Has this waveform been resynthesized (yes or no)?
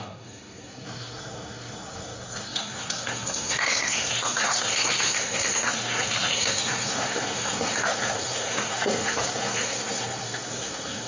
yes